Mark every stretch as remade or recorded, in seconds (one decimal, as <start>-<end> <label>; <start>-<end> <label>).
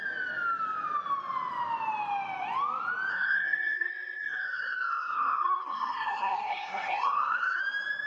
0.0-3.1 recorded; 3.1-7.6 remade; 7.6-8.1 recorded